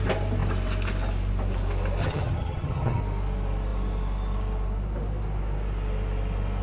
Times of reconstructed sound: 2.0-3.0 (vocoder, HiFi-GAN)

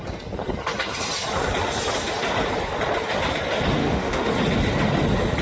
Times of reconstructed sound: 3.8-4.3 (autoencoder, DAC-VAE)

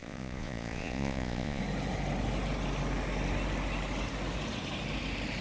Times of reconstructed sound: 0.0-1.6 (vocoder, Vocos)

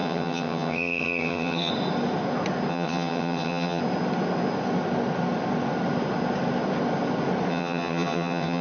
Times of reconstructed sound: 0.0-1.7 (vocoder, HiFi-GAN); 2.7-3.8; 7.5-8.6